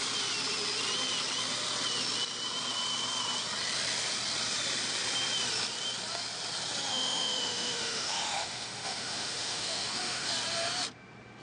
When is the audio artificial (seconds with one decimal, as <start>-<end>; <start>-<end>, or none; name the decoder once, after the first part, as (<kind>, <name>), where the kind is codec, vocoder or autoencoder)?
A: 6.9-10.3 (autoencoder, DAC-VAE)